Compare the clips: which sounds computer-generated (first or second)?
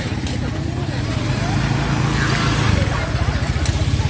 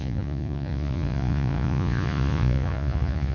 second